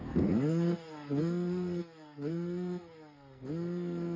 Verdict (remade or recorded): remade